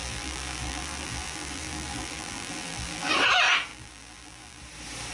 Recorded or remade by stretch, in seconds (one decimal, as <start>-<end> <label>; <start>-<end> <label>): 0.0-3.1 remade; 3.1-3.7 recorded; 3.7-4.6 remade; 4.6-5.1 recorded